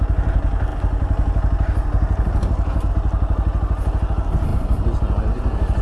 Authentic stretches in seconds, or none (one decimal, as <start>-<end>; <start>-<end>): 0.0-5.8